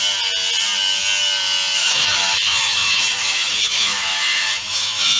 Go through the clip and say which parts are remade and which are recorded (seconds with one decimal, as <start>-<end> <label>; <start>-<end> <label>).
0.0-1.8 recorded; 1.8-5.2 remade